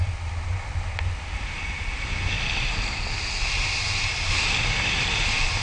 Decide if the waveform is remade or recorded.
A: recorded